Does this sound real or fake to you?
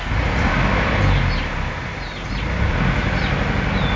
real